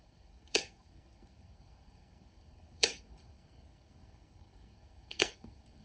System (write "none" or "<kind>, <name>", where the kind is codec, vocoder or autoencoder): codec, SNAC